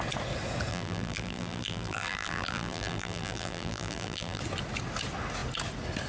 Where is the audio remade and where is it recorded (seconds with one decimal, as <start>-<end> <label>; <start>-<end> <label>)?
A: 0.0-0.7 recorded; 0.7-4.4 remade; 4.4-6.1 recorded